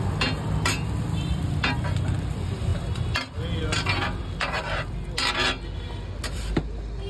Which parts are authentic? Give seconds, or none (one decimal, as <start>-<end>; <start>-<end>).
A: 0.0-7.1